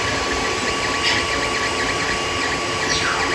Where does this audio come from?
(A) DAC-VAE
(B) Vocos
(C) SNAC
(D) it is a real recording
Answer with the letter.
D